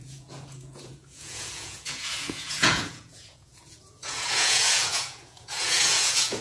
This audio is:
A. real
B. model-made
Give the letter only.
B